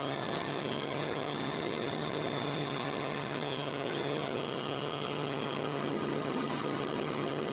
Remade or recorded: remade